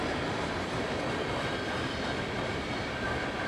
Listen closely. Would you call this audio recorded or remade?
remade